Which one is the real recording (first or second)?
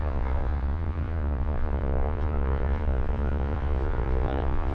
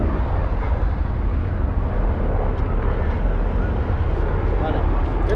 second